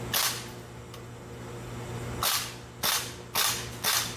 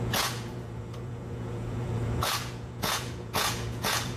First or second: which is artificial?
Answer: second